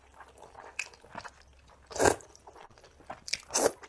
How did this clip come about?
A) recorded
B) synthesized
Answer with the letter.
A